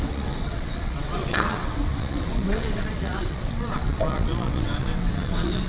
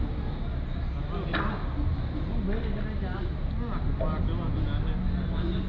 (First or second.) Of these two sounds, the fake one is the first